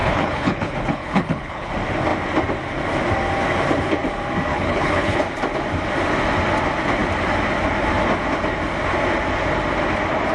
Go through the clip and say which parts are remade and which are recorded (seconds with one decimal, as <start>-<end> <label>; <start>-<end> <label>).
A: 0.0-1.7 remade; 1.7-4.5 recorded; 4.5-5.2 remade; 5.2-10.3 recorded